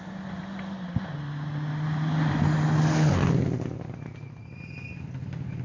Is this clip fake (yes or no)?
no